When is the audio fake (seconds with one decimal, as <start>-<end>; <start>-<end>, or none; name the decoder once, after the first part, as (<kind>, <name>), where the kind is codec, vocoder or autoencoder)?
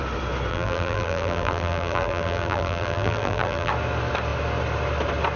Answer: 0.5-3.7 (vocoder, BigVGAN v2)